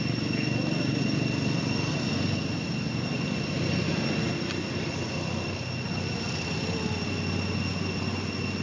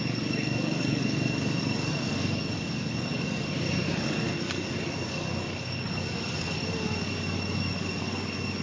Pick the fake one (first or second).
second